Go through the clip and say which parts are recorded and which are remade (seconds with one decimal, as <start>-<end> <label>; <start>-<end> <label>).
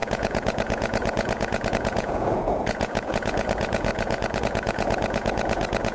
0.0-5.9 remade